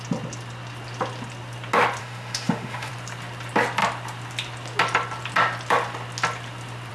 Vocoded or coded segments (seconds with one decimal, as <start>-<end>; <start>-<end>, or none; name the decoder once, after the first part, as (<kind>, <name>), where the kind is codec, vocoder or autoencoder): 2.0-2.9 (autoencoder, DAC-VAE)